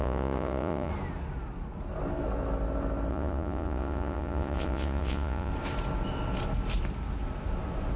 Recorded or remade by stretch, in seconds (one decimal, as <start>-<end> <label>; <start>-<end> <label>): 0.0-0.9 remade; 0.9-3.1 recorded; 3.1-5.5 remade; 5.5-8.0 recorded